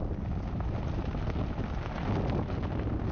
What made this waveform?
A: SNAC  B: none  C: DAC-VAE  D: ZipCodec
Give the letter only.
B